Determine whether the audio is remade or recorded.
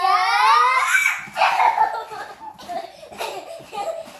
recorded